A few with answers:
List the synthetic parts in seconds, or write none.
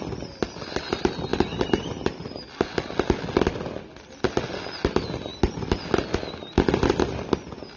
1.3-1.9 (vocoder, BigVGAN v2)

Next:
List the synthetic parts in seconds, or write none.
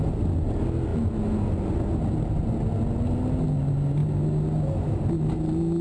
none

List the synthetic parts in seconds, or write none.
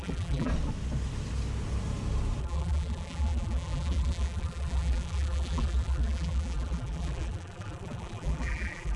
0.0-0.5 (vocoder, BigVGAN v2); 2.4-9.0